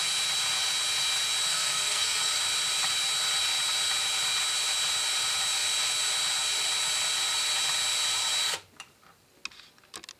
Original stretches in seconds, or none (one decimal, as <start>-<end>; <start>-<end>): 0.0-1.5; 2.3-10.2